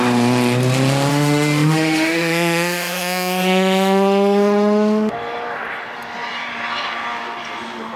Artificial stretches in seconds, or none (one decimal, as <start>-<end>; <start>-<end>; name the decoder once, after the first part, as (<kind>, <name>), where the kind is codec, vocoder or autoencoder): 1.1-5.1 (autoencoder, DAC-VAE)